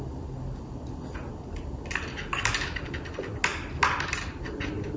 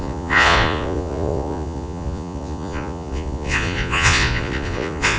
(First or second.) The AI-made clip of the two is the second